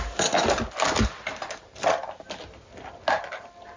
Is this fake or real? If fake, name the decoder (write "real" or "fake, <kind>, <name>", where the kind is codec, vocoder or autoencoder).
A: real